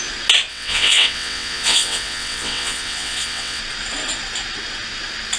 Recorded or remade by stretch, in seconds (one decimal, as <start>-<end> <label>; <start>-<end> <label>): 0.0-0.5 recorded; 0.5-3.6 remade; 3.6-5.4 recorded